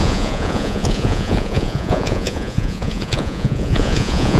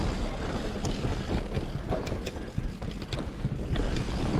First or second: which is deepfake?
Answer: first